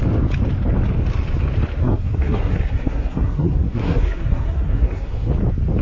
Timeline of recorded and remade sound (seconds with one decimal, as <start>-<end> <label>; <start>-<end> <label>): 0.0-1.8 recorded; 1.8-5.3 remade; 5.3-5.8 recorded